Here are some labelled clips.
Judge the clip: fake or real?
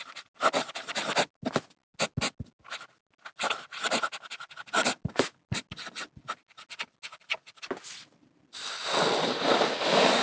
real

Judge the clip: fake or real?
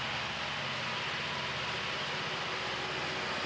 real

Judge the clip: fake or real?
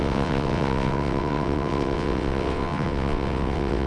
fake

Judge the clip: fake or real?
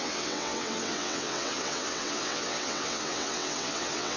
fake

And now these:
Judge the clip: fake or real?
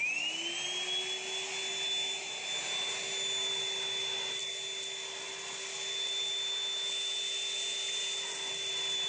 real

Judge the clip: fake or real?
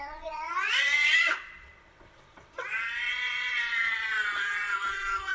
fake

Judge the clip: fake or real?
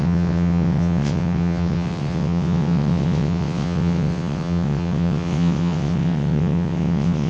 fake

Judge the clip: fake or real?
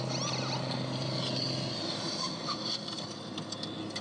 real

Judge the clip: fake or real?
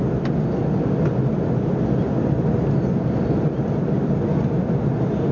real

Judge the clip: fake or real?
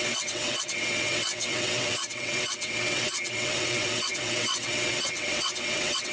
fake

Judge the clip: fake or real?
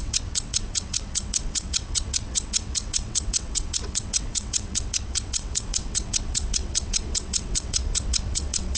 fake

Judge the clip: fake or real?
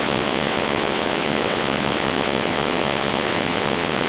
fake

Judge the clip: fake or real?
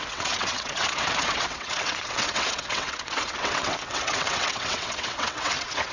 fake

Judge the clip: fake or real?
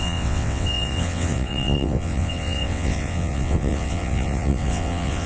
fake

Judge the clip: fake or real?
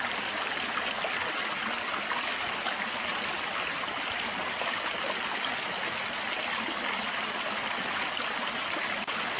real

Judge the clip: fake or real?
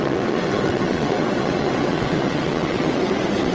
fake